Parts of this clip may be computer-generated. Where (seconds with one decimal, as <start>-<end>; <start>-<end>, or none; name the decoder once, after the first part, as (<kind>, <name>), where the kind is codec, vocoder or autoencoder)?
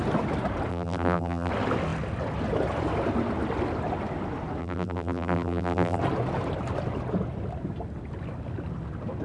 0.7-1.5 (vocoder, BigVGAN v2); 4.6-6.0